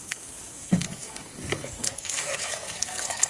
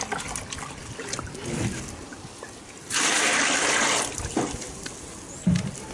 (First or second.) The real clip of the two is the second